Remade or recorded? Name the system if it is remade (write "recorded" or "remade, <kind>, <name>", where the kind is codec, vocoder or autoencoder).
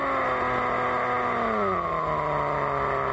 recorded